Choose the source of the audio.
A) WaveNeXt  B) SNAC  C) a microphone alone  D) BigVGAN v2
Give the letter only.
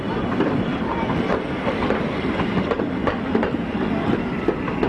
C